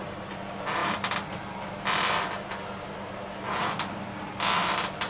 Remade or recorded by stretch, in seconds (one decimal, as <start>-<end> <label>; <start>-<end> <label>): 0.0-5.1 recorded

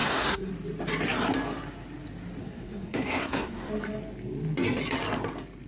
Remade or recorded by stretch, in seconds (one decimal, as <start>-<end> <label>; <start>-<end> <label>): 0.0-0.5 remade; 0.5-2.4 recorded; 2.4-3.7 remade; 3.7-5.7 recorded

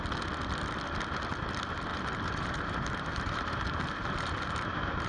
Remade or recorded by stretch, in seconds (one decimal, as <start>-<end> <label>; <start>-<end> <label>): 0.0-1.9 recorded; 1.9-5.1 remade

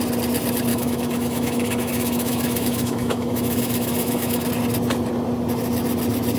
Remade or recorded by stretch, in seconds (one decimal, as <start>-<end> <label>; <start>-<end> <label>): 0.0-0.7 recorded; 0.7-4.5 remade; 4.5-6.4 recorded

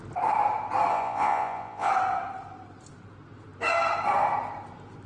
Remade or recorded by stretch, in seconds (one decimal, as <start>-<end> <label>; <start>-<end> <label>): 0.0-0.9 recorded; 0.9-1.9 remade; 1.9-5.1 recorded

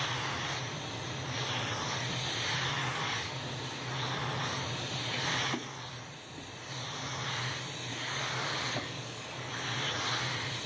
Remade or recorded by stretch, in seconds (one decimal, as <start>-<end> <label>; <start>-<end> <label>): 0.0-2.8 recorded; 2.8-3.4 remade; 3.4-7.9 recorded; 7.9-9.5 remade; 9.5-10.7 recorded

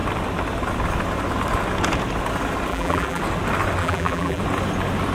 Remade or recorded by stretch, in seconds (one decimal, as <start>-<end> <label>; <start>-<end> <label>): 0.0-2.7 recorded; 2.7-3.2 remade; 3.2-3.8 recorded; 3.8-4.4 remade; 4.4-5.1 recorded